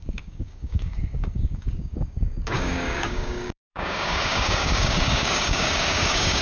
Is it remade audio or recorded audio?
remade